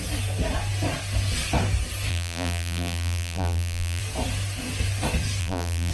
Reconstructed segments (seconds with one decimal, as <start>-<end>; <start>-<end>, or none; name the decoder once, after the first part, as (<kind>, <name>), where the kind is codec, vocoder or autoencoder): 2.1-4.0 (vocoder, BigVGAN v2); 5.4-5.9

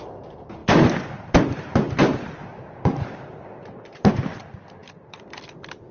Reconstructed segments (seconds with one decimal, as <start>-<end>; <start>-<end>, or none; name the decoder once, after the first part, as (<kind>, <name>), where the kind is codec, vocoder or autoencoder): 0.6-4.1 (vocoder, BigVGAN v2); 4.8-5.9

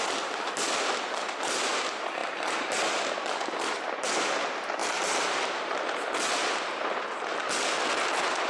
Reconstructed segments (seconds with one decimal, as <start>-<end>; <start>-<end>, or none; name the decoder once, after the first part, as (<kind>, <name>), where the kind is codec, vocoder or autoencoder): 4.8-5.8 (vocoder, BigVGAN v2)

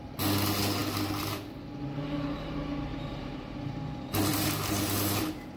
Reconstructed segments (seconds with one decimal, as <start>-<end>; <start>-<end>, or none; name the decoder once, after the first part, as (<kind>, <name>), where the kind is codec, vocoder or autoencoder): 2.9-3.8 (vocoder, BigVGAN v2); 4.3-5.6

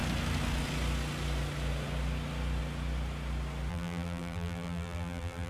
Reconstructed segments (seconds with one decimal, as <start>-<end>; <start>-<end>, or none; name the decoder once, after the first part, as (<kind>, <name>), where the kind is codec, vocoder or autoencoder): 3.7-5.5 (vocoder, BigVGAN v2)

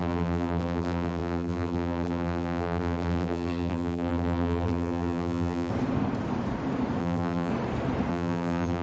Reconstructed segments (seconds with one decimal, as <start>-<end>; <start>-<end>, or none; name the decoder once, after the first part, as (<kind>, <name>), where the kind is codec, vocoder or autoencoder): 0.0-5.7 (vocoder, BigVGAN v2); 7.0-7.5; 8.1-8.8

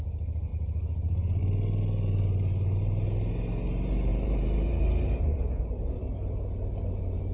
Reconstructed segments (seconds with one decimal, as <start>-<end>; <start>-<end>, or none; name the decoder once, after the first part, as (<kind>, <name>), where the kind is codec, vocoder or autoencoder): 4.1-5.2 (vocoder, BigVGAN v2)